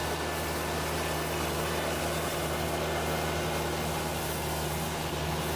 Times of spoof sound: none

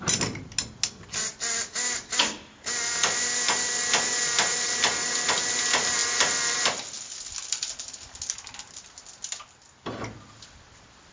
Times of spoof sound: none

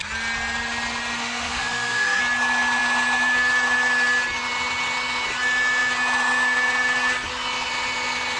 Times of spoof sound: 1.2-2.2 (autoencoder, DAC-VAE)

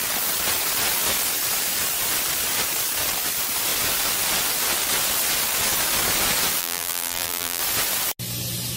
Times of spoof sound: 6.6-7.6 (vocoder, BigVGAN v2)

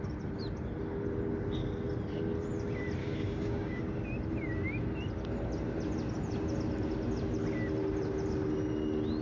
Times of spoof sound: 3.0-3.8 (codec, DAC)